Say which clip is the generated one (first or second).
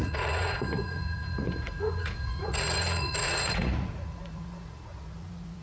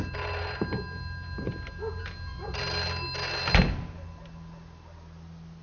first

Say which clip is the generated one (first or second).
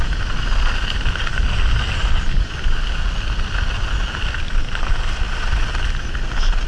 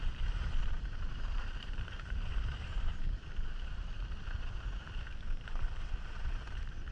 second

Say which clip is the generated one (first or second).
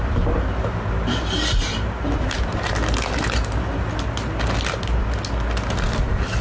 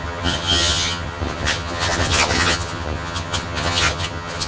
second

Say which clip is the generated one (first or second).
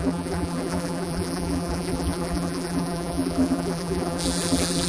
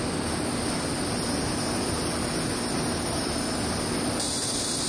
first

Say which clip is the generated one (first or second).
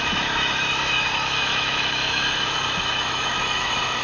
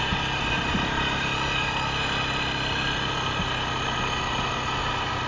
first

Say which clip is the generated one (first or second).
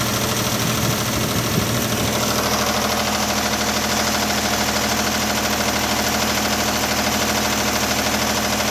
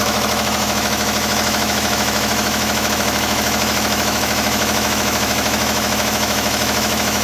second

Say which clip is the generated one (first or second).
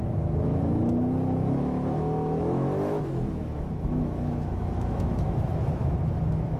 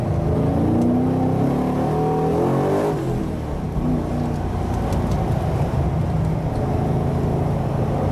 first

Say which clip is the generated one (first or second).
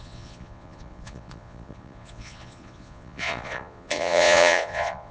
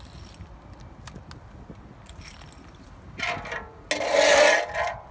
first